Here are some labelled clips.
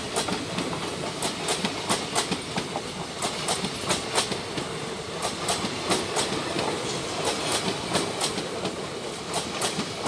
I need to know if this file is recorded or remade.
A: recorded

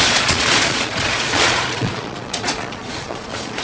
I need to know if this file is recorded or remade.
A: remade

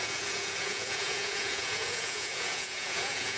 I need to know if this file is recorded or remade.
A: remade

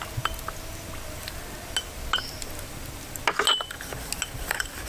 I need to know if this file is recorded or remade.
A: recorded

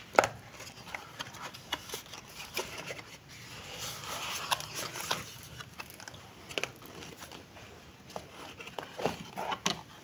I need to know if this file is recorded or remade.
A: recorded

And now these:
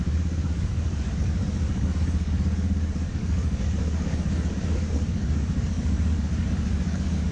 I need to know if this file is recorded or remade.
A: remade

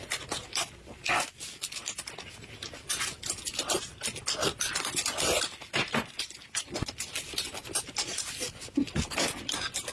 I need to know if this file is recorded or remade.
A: recorded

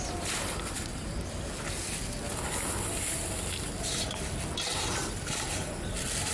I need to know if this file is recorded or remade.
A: recorded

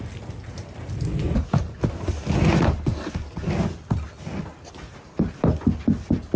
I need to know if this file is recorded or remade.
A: recorded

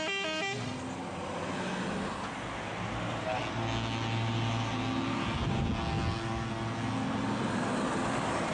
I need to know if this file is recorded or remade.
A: recorded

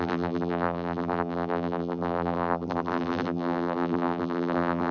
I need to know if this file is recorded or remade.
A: remade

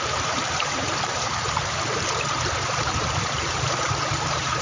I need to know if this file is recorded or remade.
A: remade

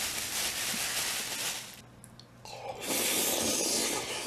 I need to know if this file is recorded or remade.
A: recorded